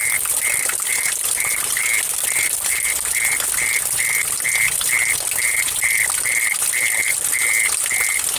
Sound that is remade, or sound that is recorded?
recorded